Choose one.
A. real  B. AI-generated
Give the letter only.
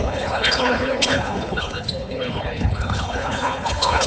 B